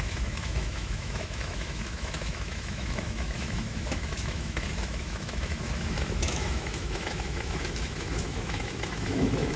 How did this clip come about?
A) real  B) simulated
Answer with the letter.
B